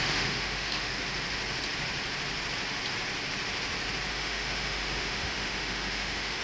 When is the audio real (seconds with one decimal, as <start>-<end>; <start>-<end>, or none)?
0.9-4.1